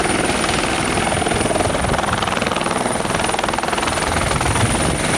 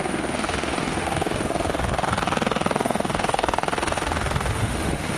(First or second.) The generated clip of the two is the second